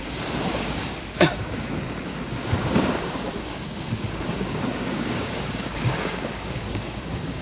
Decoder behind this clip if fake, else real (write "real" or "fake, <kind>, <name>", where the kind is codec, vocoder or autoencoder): fake, codec, DAC